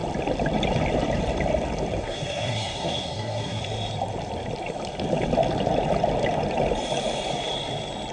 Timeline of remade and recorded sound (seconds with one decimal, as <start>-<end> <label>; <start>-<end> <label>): 0.0-2.0 recorded; 2.0-3.6 remade; 3.6-8.1 recorded